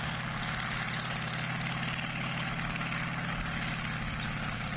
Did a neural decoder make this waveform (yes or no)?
no